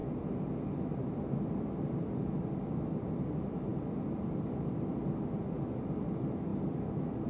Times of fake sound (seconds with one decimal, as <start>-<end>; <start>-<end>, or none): none